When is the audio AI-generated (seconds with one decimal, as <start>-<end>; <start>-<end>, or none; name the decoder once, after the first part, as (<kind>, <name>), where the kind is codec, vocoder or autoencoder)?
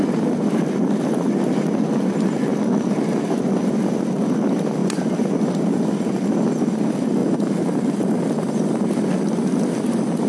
7.2-8.2 (vocoder, BigVGAN v2)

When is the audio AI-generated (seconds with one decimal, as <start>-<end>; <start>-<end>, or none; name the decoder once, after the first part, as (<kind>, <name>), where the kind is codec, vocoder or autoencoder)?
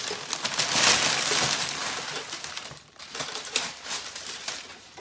1.8-5.0 (vocoder, BigVGAN v2)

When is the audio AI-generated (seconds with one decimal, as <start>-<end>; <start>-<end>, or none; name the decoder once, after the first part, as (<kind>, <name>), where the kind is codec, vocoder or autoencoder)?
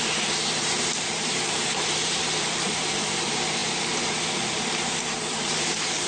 0.0-6.1 (vocoder, BigVGAN v2)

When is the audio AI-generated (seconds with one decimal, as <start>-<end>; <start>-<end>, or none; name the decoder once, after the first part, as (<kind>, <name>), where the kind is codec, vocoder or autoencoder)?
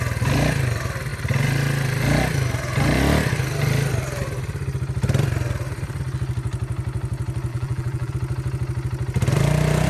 7.5-8.1 (vocoder, BigVGAN v2)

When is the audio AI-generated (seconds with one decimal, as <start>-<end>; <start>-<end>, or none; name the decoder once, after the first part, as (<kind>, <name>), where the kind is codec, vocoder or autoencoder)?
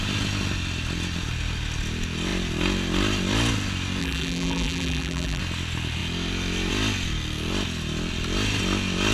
4.0-5.4 (vocoder, BigVGAN v2)